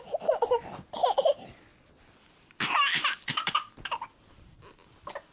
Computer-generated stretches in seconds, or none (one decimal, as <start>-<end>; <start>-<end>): 1.7-3.7